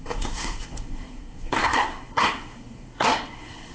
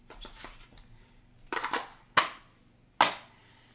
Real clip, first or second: second